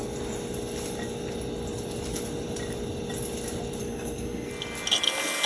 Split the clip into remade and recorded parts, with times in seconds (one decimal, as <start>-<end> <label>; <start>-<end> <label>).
0.0-3.8 recorded; 3.8-4.5 remade; 4.5-5.5 recorded